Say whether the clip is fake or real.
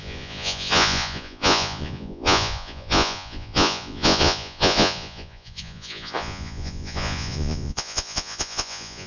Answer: fake